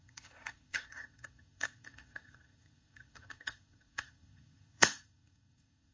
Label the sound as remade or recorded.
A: remade